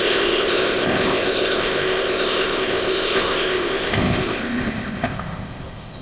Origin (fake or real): fake